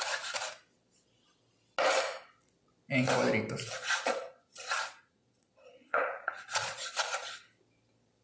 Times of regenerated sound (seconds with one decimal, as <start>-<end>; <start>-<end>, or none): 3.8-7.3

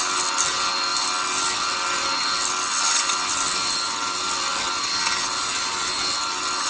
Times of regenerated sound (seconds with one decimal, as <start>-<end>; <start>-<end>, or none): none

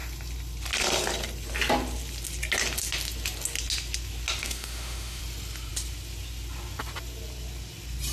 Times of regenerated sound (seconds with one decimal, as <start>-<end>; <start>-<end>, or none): 4.4-5.2